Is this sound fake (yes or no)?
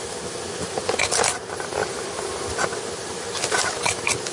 no